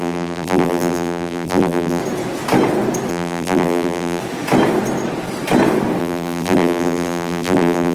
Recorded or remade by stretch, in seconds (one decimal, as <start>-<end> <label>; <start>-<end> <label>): 0.0-2.0 remade; 2.0-3.1 recorded; 3.1-4.2 remade; 4.2-6.0 recorded; 6.0-7.9 remade

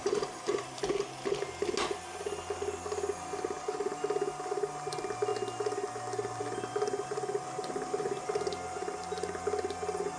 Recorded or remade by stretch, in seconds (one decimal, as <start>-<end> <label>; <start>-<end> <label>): 0.0-0.8 remade; 0.8-10.2 recorded

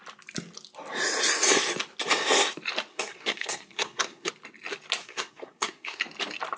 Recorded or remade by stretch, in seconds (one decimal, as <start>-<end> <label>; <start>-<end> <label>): 0.0-2.9 recorded; 2.9-4.3 remade; 4.3-5.0 recorded; 5.0-6.0 remade; 6.0-6.6 recorded

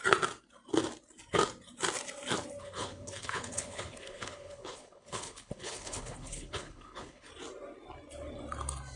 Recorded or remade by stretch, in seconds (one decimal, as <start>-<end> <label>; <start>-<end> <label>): 0.0-2.6 recorded; 2.6-7.3 remade; 7.3-9.0 recorded

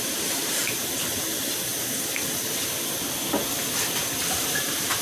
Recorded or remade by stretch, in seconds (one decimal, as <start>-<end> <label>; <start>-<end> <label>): 0.0-1.7 remade; 1.7-4.4 recorded; 4.4-5.0 remade

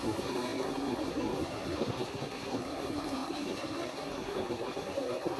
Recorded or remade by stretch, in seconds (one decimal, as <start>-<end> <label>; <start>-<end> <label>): 0.0-5.4 remade

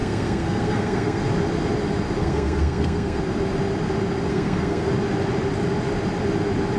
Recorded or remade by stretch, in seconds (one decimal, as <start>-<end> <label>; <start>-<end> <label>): 0.0-1.2 remade; 1.2-2.2 recorded; 2.2-3.2 remade; 3.2-4.3 recorded; 4.3-4.9 remade; 4.9-6.8 recorded

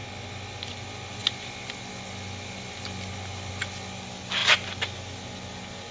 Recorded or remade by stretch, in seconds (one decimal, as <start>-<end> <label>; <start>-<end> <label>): 0.0-5.9 recorded